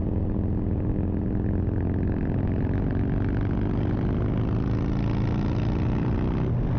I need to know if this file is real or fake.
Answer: real